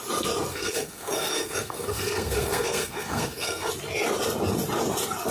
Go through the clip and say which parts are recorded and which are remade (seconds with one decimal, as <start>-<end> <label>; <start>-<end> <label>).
0.0-0.5 recorded; 0.5-3.7 remade; 3.7-5.3 recorded